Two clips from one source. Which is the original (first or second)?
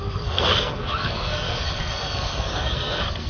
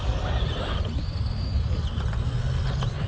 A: second